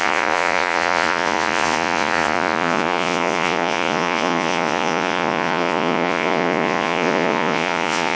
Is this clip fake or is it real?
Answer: fake